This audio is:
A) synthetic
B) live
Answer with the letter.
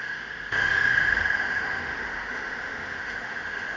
A